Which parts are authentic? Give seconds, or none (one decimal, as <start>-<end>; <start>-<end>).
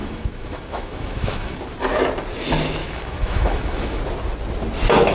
1.6-2.8; 4.0-5.1